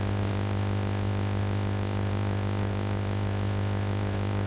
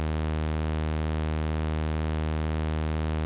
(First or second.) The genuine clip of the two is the second